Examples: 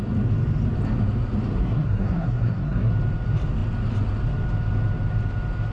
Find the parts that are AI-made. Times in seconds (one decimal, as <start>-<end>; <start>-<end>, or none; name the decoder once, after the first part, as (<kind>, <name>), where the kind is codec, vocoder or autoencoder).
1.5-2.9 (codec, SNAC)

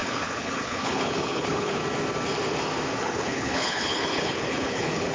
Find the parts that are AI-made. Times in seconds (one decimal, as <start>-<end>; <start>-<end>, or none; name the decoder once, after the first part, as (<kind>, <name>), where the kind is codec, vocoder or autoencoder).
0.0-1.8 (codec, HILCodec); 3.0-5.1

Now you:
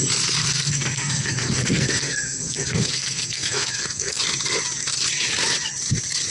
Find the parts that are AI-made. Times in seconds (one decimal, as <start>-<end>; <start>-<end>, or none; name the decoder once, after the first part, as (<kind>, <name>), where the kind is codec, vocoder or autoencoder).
0.4-4.2 (codec, SNAC)